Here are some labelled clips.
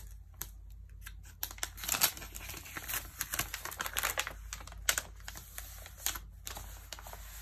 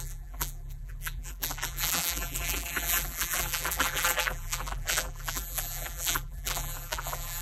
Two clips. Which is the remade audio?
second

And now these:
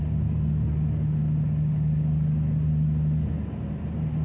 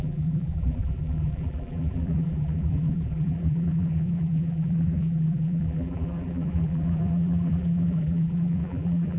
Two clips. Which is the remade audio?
second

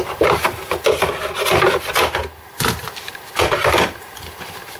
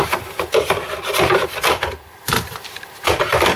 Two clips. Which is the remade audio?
second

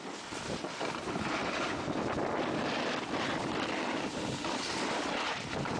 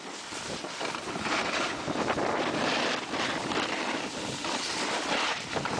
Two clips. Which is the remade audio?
second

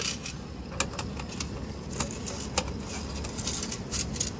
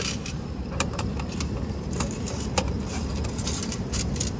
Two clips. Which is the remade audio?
second